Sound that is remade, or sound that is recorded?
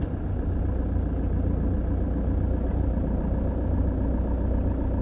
recorded